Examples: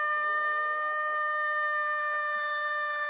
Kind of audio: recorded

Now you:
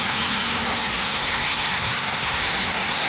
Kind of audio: remade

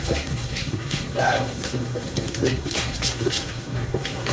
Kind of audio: remade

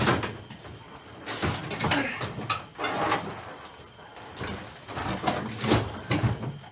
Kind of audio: recorded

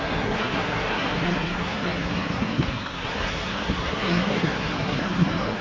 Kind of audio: remade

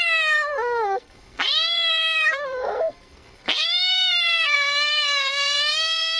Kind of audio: remade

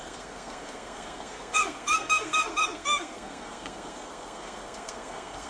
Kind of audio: remade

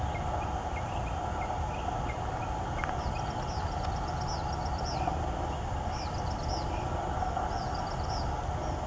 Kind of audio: recorded